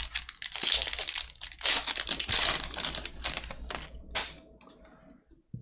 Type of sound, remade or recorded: recorded